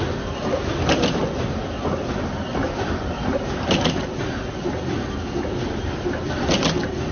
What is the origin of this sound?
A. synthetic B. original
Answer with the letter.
A